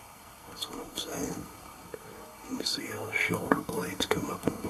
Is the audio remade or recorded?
remade